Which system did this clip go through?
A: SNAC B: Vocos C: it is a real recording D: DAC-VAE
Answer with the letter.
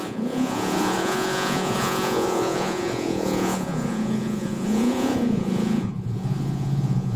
B